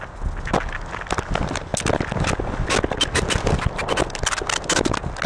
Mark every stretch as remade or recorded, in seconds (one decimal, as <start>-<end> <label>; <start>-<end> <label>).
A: 0.0-5.3 recorded